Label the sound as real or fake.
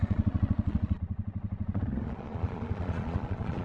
fake